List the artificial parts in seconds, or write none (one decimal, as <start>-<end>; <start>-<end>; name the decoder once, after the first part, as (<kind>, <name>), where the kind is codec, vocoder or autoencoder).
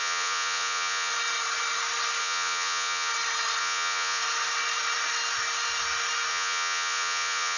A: 0.0-1.1 (vocoder, Vocos); 2.2-3.1; 3.6-4.2; 6.3-7.6